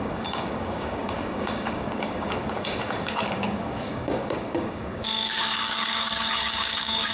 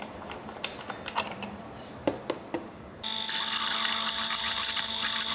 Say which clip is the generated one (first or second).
first